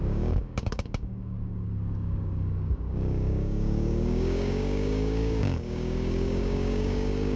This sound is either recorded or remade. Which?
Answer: remade